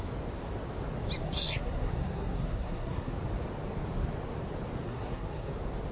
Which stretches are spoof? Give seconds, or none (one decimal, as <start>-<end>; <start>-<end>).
1.2-3.1; 4.8-5.5